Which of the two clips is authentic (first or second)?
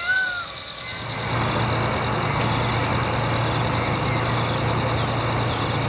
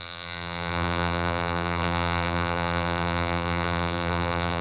first